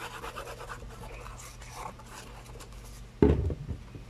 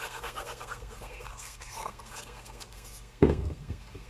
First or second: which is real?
first